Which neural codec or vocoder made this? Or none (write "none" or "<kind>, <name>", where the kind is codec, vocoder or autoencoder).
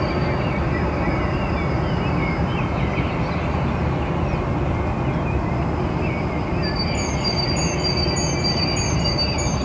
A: none